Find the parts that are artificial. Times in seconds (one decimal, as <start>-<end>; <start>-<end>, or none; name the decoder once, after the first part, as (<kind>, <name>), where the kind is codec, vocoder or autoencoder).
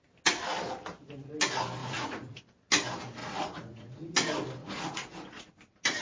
1.8-2.4 (vocoder, Vocos); 3.2-4.1; 4.6-5.5